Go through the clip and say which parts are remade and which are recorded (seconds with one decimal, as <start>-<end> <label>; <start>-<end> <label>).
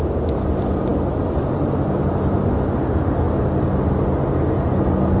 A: 0.0-5.2 recorded